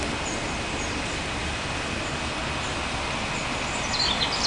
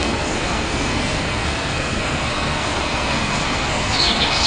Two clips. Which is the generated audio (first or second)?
second